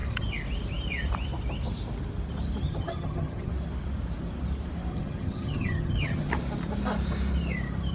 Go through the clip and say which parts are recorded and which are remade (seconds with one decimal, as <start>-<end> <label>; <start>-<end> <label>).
0.0-2.6 recorded; 2.6-3.5 remade; 3.5-4.9 recorded; 4.9-6.3 remade; 6.3-7.9 recorded